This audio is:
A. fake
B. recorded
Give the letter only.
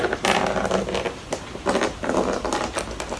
B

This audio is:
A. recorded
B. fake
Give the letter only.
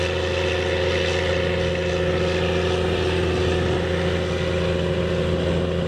A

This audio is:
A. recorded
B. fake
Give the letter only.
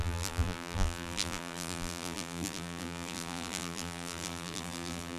B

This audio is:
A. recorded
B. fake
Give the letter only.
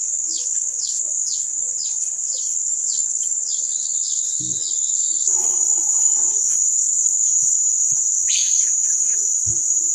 B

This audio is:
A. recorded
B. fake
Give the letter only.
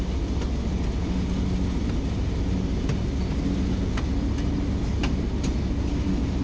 A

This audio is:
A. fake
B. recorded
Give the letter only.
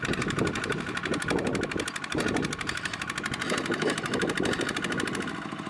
B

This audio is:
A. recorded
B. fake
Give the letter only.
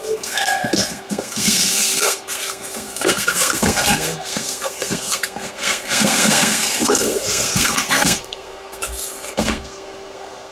B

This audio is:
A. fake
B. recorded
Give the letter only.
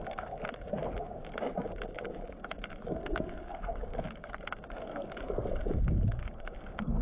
A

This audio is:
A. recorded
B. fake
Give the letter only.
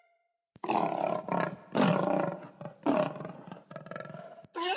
B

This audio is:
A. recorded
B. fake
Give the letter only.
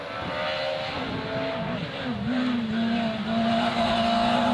A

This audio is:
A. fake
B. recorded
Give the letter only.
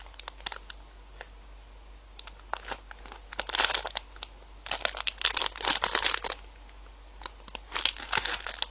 B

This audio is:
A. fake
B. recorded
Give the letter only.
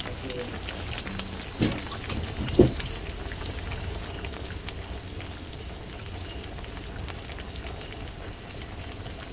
B